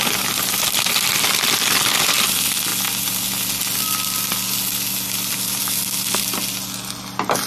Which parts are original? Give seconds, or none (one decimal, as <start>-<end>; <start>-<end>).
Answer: 0.0-7.5